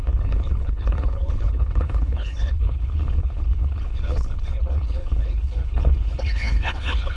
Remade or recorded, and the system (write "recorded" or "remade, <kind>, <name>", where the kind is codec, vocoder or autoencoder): remade, codec, HILCodec